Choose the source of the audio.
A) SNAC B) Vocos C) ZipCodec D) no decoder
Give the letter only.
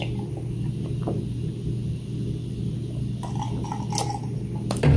D